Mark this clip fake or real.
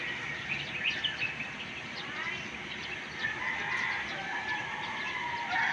real